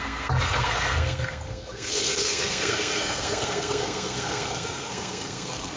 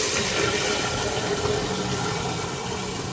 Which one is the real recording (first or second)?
second